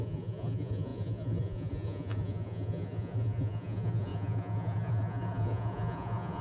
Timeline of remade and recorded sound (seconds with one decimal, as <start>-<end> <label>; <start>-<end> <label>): 0.0-6.4 remade